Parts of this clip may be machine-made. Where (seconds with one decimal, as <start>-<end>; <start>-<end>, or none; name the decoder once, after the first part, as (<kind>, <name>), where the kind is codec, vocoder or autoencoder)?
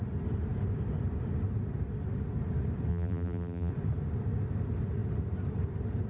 2.9-3.7 (vocoder, BigVGAN v2)